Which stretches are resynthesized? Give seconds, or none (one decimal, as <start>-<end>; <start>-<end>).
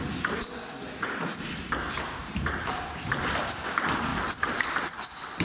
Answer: 2.2-3.6; 4.1-4.7